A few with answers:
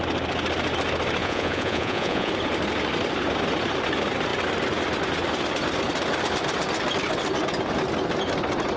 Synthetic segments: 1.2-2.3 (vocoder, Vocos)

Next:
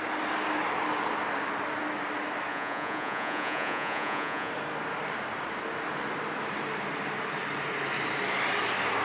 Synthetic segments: 2.5-4.5 (vocoder, Vocos)

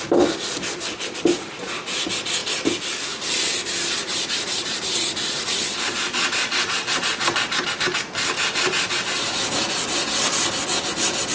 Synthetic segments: 5.6-7.6 (vocoder, Vocos)

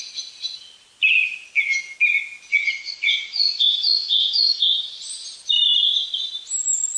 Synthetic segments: 2.5-4.6 (vocoder, Vocos)

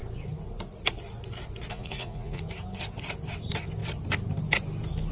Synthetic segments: 1.7-2.4 (vocoder, Vocos)